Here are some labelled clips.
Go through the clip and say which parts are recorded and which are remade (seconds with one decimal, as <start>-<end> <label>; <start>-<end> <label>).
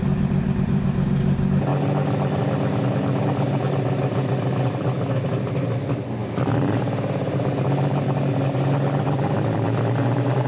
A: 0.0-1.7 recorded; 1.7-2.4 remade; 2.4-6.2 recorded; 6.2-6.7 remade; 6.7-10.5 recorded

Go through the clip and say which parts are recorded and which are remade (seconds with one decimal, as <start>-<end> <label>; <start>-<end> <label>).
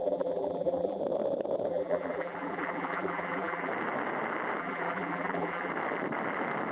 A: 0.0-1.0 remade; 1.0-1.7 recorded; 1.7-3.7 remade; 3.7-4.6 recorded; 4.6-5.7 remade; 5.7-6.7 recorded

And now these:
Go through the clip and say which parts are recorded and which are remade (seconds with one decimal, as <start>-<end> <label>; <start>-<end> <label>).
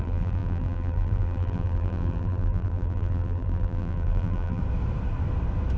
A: 0.0-4.6 remade; 4.6-5.8 recorded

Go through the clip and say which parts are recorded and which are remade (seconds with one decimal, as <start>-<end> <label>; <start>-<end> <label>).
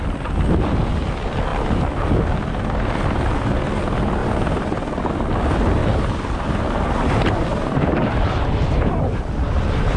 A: 0.0-4.2 recorded; 4.2-5.0 remade; 5.0-5.8 recorded; 5.8-10.0 remade